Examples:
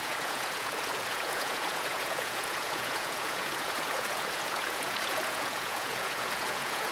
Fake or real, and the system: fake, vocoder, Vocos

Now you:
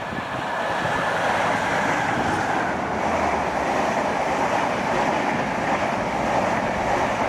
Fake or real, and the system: real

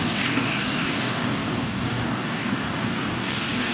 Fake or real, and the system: fake, codec, DAC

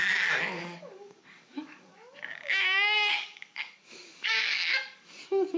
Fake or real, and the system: fake, codec, DAC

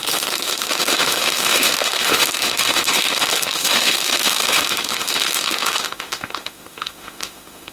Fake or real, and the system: fake, autoencoder, DAC-VAE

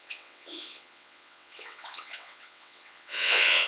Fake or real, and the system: fake, vocoder, WaveNeXt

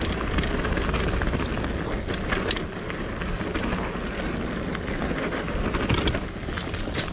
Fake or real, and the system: real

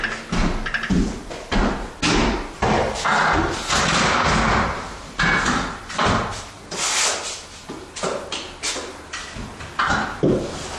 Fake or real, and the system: real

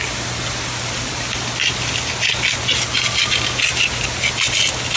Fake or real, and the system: real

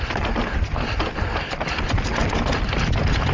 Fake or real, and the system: real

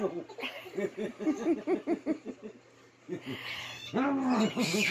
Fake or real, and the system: real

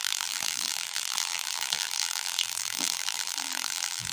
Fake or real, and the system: fake, vocoder, BigVGAN v2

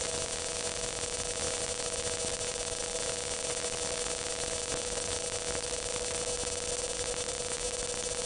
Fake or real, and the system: real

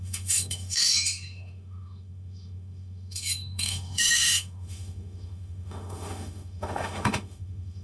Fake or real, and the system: fake, autoencoder, DAC-VAE